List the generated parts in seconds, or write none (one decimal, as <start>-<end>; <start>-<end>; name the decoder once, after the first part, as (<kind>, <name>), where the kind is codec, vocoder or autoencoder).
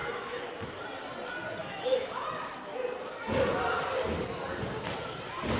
0.0-0.5 (autoencoder, DAC-VAE); 1.6-2.1